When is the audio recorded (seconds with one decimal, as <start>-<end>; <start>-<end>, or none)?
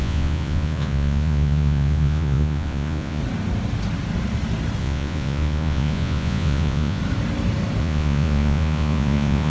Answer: 3.2-4.8; 7.0-7.8